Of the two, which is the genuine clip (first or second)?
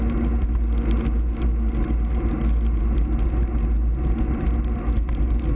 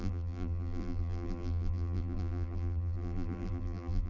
first